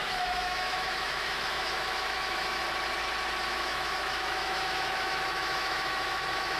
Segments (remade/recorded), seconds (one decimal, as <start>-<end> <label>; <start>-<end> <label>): 0.0-2.6 remade; 2.6-3.5 recorded; 3.5-6.6 remade